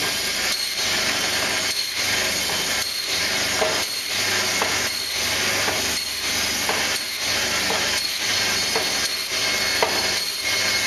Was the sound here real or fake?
real